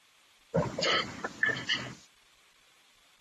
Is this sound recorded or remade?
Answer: recorded